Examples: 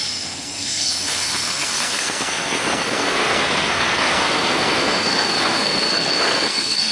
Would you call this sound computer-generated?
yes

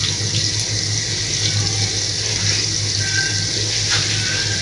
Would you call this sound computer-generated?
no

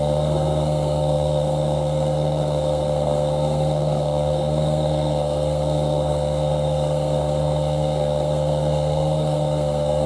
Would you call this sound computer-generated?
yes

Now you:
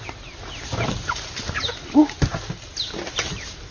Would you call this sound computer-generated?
no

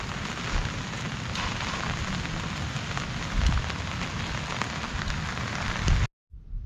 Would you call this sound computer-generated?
no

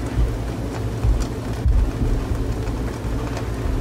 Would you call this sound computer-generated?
no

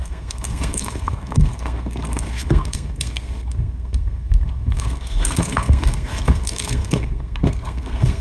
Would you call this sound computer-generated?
yes